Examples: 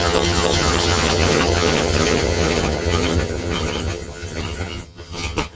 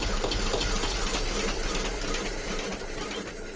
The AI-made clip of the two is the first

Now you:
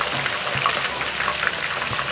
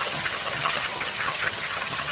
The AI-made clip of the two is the second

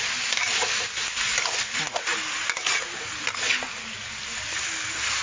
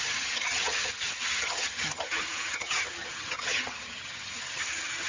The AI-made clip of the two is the second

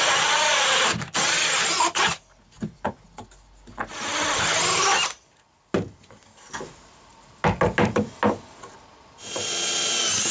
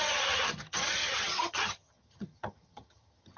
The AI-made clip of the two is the second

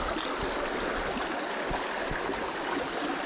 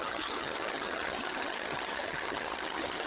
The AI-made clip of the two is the second